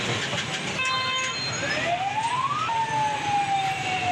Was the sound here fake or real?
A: real